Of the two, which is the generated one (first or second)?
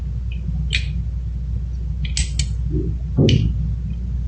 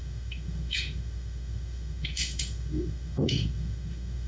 second